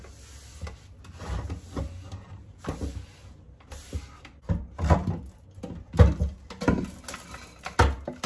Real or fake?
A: real